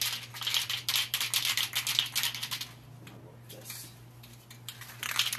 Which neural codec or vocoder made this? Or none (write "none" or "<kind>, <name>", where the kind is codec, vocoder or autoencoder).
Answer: none